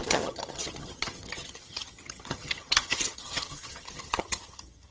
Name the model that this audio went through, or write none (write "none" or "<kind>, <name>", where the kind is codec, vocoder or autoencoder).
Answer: vocoder, HiFi-GAN